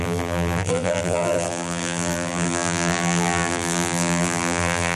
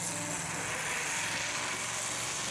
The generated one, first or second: first